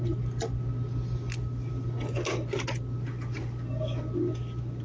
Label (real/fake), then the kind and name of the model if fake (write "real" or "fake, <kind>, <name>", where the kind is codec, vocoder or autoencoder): real